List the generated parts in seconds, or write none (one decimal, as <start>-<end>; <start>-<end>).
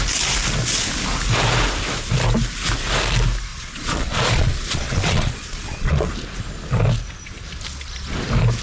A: 3.5-6.1